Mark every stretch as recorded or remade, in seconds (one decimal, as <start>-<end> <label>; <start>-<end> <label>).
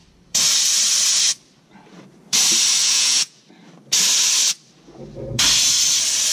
0.0-2.8 recorded; 2.8-3.4 remade; 3.4-6.3 recorded